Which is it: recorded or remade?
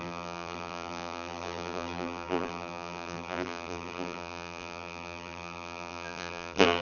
remade